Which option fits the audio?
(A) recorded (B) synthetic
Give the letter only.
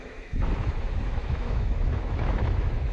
B